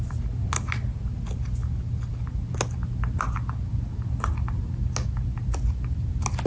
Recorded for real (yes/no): yes